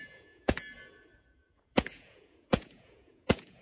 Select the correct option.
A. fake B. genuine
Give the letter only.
A